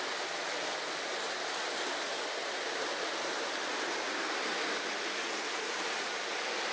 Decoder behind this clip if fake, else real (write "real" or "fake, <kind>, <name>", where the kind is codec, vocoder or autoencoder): real